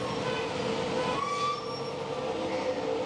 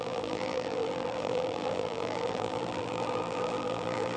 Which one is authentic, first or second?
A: first